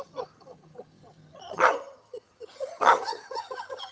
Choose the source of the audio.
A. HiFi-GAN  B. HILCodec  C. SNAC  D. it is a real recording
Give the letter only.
A